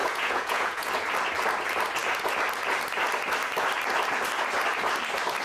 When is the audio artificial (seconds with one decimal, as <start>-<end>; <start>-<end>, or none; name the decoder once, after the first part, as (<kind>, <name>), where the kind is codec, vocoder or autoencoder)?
0.0-0.9 (vocoder, Vocos)